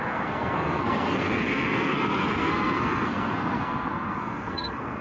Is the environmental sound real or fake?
fake